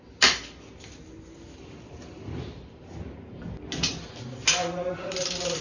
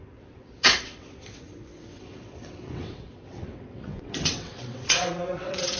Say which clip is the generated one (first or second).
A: second